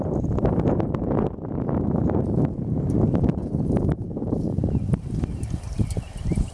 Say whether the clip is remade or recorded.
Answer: remade